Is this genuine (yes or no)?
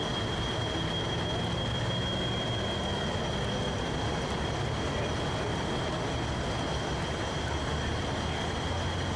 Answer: yes